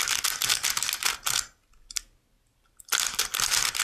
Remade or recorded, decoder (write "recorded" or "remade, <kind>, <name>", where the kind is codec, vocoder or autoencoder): recorded